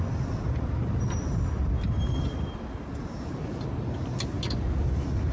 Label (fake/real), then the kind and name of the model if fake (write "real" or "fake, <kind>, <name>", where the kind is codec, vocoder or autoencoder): real